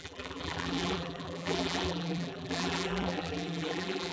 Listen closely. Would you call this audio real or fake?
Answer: fake